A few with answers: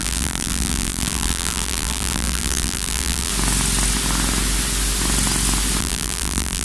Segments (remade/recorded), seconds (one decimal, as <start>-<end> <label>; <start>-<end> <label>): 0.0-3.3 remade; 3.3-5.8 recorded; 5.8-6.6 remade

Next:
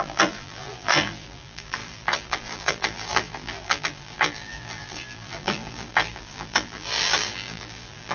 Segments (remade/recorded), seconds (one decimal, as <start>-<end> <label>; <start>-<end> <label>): 0.0-8.1 remade

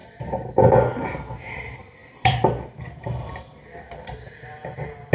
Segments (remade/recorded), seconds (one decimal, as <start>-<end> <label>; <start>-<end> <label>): 0.0-2.0 recorded; 2.0-5.1 remade

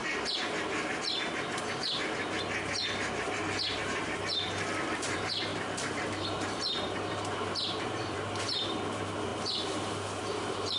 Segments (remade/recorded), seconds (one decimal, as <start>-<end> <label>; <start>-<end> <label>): 0.0-3.7 recorded; 3.7-10.8 remade

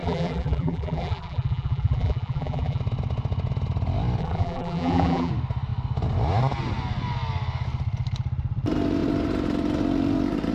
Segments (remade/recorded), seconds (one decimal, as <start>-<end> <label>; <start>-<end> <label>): 0.0-2.8 remade; 2.8-4.2 recorded; 4.2-5.3 remade; 5.3-10.5 recorded